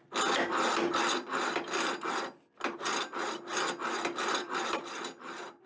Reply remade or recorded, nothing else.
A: recorded